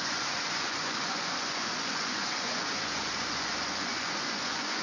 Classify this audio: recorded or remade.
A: remade